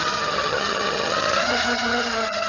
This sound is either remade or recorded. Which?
remade